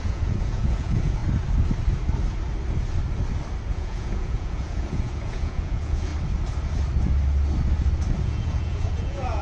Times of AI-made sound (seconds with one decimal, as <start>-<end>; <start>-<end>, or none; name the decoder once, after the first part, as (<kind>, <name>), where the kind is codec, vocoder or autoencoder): 0.0-1.2 (vocoder, Vocos); 3.7-6.1; 8.2-9.4